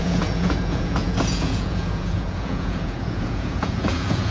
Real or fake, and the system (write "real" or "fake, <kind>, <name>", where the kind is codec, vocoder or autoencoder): fake, vocoder, Vocos